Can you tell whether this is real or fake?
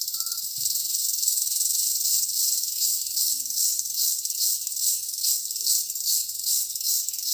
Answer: fake